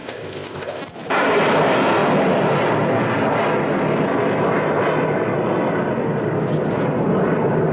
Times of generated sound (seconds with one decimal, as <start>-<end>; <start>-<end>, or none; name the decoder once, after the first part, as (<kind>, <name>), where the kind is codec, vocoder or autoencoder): 0.0-0.8 (codec, ZipCodec)